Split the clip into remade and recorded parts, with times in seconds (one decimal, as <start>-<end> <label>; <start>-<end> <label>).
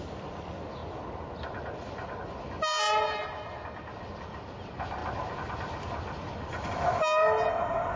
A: 0.0-8.0 recorded